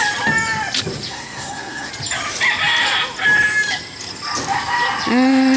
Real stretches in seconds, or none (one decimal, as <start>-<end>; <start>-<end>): 0.0-1.1; 1.9-5.6